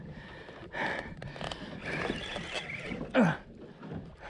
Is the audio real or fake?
real